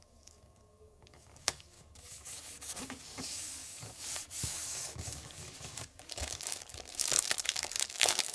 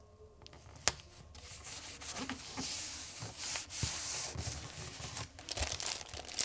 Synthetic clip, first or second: first